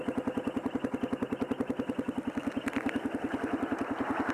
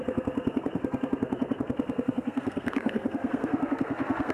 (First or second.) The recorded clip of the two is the first